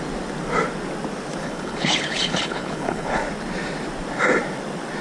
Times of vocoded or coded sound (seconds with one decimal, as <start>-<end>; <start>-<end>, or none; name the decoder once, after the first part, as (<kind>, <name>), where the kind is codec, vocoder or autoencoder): 1.4-3.2 (codec, HILCodec)

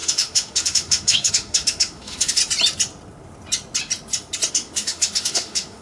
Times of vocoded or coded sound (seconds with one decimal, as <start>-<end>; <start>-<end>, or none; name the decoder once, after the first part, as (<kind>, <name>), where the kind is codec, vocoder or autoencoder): 0.0-2.4 (autoencoder, DAC-VAE); 4.5-5.8

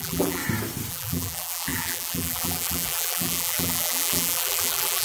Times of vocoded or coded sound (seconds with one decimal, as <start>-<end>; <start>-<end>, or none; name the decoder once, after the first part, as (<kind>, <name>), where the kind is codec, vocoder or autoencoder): 0.0-0.4 (vocoder, BigVGAN v2); 0.9-5.0

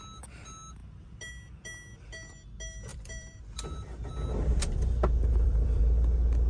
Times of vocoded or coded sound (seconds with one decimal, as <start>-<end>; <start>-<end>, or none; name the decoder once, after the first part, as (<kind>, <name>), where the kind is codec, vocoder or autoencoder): 2.9-4.1 (vocoder, BigVGAN v2); 5.3-5.8